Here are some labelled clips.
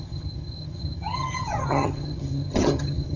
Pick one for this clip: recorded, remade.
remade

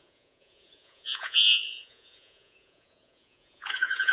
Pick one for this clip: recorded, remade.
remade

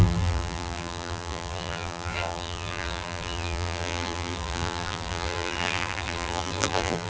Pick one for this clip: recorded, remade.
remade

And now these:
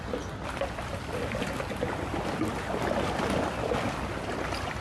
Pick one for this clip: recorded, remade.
recorded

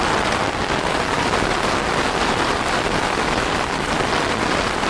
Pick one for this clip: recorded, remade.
remade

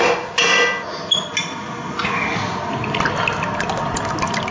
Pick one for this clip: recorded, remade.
recorded